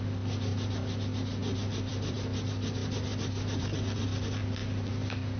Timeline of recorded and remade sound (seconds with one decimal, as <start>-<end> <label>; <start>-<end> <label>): 0.0-5.4 recorded